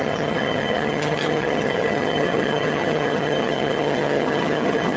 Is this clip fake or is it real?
fake